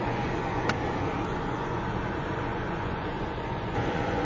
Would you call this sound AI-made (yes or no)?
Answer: yes